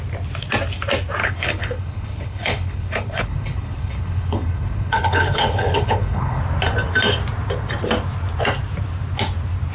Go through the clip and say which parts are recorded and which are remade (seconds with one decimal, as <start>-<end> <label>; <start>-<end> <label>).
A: 0.0-1.2 recorded; 1.2-6.4 remade; 6.4-9.7 recorded

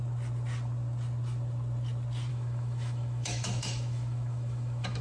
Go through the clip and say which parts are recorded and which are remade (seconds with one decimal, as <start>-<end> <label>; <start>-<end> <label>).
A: 0.0-2.3 recorded; 2.3-5.0 remade

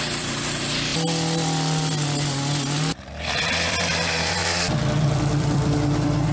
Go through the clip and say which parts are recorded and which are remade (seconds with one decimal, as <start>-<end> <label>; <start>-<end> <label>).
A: 0.0-0.9 remade; 0.9-3.2 recorded; 3.2-6.3 remade